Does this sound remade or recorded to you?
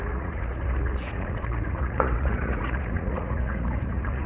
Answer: remade